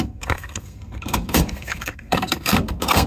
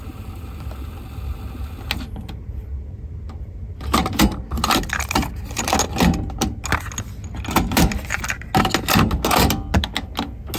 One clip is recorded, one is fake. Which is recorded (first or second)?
second